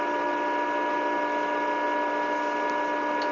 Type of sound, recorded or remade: recorded